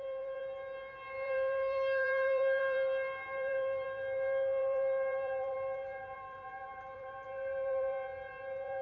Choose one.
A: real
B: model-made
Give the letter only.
B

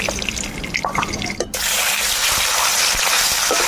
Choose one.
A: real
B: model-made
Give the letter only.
B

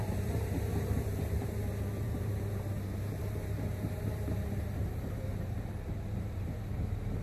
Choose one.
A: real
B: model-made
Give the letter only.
B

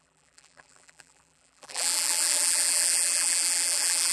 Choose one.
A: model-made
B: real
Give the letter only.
A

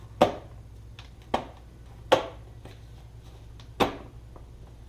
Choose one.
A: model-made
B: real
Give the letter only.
B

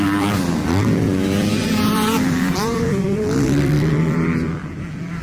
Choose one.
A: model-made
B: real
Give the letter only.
A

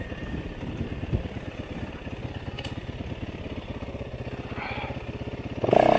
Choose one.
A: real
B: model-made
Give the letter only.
A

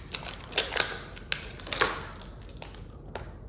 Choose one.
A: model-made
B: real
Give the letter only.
B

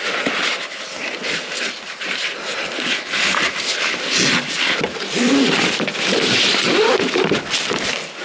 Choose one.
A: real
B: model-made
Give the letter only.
A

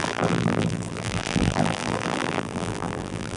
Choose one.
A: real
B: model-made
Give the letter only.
B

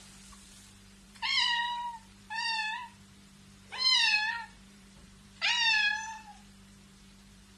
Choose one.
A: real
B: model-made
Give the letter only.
B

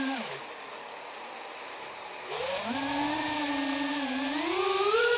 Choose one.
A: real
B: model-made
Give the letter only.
B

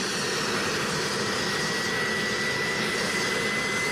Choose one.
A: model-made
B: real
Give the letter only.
B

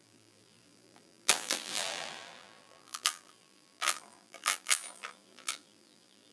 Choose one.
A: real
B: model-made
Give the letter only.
B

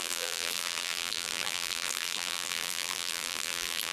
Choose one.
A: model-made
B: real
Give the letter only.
A